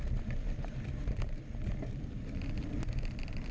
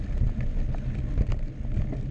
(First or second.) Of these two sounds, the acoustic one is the second